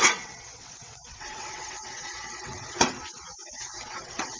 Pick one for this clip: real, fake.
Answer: fake